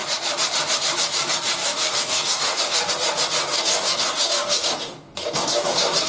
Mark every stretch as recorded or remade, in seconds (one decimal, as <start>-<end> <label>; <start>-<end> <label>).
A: 0.0-1.6 recorded; 1.6-2.9 remade; 2.9-3.5 recorded; 3.5-6.1 remade